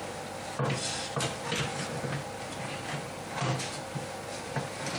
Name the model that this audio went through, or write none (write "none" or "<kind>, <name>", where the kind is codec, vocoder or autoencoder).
none